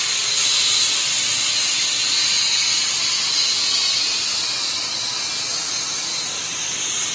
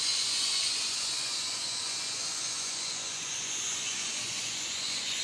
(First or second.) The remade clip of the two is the second